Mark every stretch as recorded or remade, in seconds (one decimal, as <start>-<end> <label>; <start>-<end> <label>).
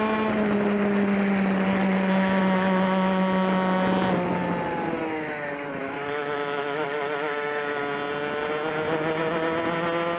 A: 0.0-5.8 recorded; 5.8-7.8 remade; 7.8-10.2 recorded